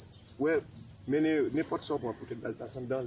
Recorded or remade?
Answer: recorded